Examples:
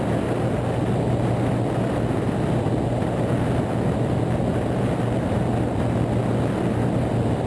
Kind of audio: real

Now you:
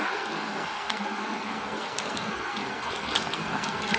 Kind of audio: fake